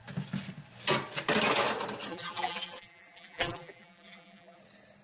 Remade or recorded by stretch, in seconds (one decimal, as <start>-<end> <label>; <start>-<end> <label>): 0.0-2.1 recorded; 2.1-4.6 remade; 4.6-5.0 recorded